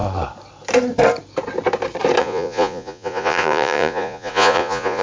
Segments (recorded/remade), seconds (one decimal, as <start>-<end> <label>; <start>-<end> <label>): 0.0-2.2 recorded; 2.2-5.0 remade